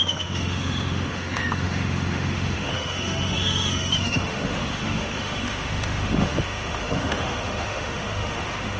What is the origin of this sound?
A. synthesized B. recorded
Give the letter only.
A